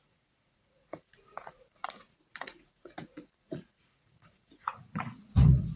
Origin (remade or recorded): remade